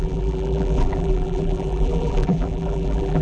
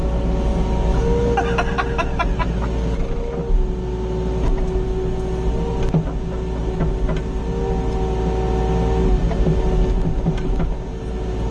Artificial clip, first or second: first